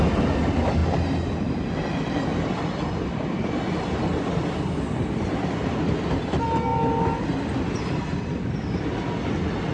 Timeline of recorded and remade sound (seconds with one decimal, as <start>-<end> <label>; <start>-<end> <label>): 0.0-9.7 recorded